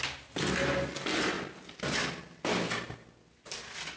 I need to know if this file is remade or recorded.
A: recorded